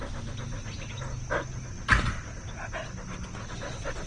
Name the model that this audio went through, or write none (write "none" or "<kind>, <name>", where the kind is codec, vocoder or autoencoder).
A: none